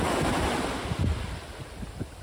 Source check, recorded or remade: recorded